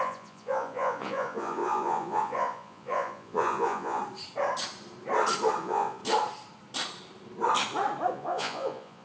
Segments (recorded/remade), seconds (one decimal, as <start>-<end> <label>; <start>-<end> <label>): 0.0-4.0 remade; 4.0-5.6 recorded; 5.6-6.0 remade; 6.0-8.1 recorded; 8.1-9.0 remade